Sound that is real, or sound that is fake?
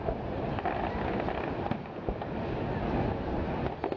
real